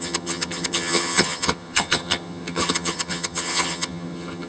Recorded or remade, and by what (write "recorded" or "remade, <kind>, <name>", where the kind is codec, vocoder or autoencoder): remade, vocoder, HiFi-GAN